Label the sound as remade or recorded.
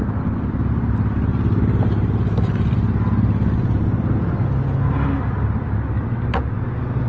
recorded